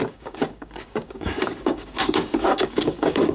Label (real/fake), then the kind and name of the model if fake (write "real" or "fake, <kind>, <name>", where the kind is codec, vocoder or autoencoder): fake, codec, DAC